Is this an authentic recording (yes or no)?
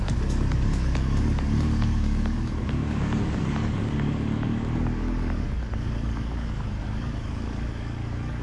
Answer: no